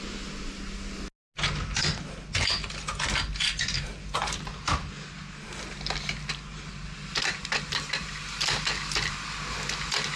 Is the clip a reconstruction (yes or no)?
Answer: no